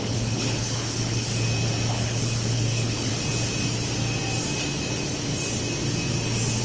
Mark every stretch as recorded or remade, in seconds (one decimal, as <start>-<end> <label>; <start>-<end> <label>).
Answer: 0.0-1.3 remade; 1.3-1.9 recorded; 1.9-3.1 remade; 3.1-6.6 recorded